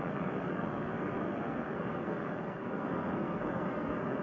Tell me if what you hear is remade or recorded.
remade